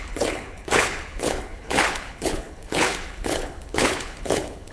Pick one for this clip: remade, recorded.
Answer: remade